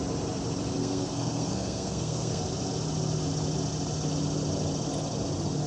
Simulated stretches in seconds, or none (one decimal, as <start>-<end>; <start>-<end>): 0.8-2.4